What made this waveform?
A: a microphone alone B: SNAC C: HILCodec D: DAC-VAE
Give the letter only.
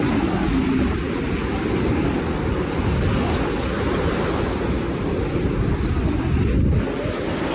A